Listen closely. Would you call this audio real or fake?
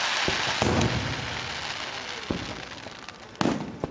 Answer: real